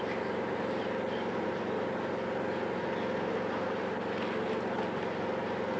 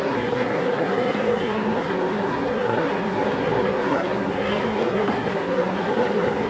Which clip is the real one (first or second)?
first